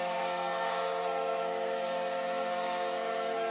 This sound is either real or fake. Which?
fake